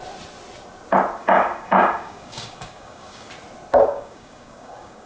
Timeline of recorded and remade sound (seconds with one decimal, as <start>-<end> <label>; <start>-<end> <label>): 0.0-1.2 recorded; 1.2-3.3 remade; 3.3-3.8 recorded; 3.8-5.1 remade